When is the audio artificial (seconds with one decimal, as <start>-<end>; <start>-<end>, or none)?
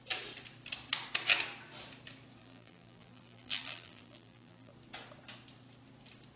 2.4-4.7